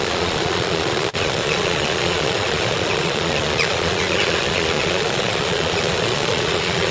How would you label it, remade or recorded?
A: remade